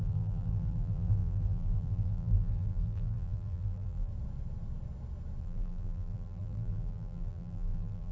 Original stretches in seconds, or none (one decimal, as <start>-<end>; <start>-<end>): 4.1-5.4